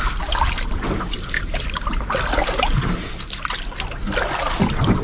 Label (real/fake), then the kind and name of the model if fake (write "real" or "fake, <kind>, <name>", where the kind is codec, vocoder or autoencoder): real